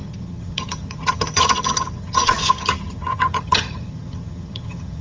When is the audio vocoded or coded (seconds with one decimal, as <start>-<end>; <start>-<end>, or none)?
0.0-5.0